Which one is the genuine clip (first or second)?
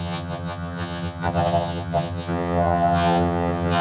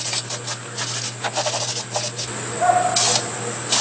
second